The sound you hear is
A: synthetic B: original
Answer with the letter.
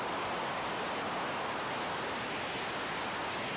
B